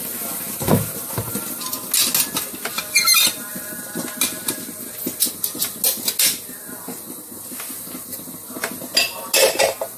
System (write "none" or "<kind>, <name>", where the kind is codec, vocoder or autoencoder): none